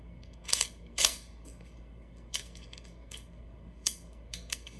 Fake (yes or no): yes